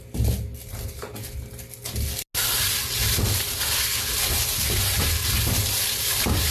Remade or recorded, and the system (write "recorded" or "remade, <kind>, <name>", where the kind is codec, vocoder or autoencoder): recorded